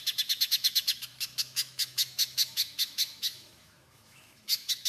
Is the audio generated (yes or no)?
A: yes